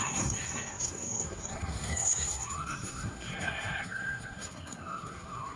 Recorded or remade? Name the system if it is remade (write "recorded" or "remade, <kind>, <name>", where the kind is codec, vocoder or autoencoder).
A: remade, codec, SNAC